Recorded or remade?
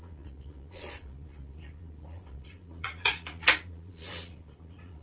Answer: remade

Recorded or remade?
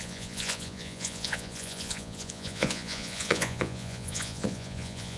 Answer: remade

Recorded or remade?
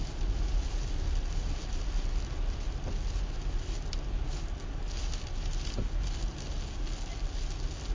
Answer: recorded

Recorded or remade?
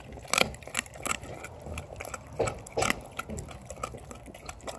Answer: recorded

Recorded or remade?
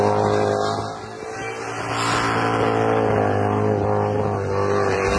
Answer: recorded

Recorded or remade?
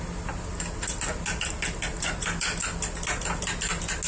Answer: recorded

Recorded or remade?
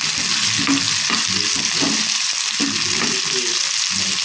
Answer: recorded